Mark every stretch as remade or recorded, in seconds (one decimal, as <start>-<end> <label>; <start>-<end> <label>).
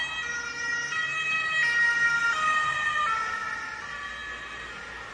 0.0-5.1 recorded